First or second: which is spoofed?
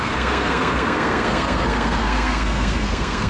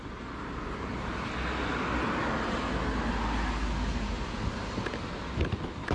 first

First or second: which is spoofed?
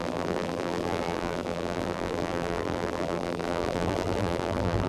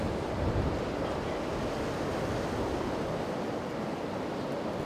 first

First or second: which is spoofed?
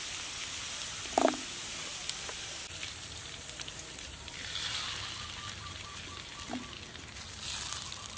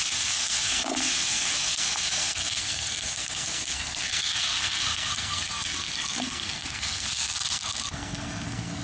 second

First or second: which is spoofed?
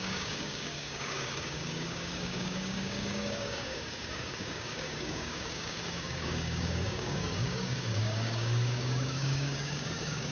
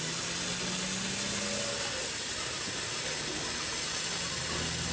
first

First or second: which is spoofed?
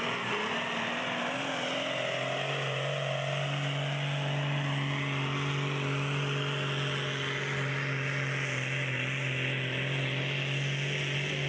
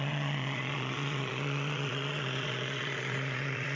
second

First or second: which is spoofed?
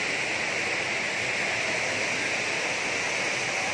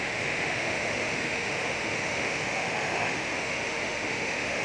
second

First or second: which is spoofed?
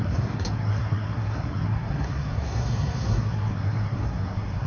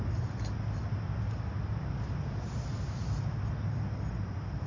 first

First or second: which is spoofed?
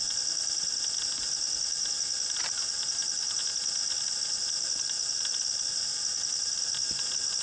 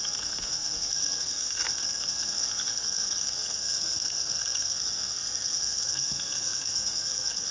second